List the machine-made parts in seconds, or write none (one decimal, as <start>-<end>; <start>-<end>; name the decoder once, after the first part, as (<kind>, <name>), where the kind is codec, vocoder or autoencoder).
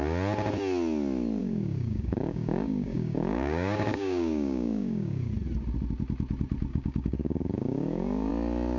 1.4-5.3 (codec, DAC); 6.7-8.3